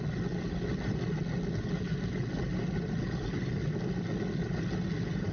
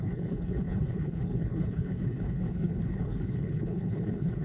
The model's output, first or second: second